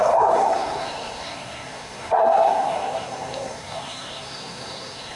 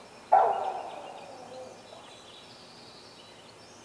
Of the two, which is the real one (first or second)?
second